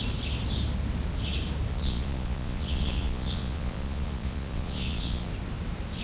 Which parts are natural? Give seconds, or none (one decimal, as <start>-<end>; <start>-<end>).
0.0-1.7; 5.3-6.0